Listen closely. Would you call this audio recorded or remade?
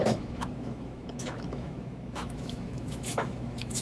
remade